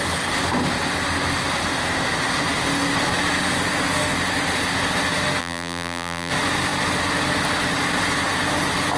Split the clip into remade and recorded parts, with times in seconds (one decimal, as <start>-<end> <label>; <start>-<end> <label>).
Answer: 0.0-5.4 recorded; 5.4-6.3 remade; 6.3-9.0 recorded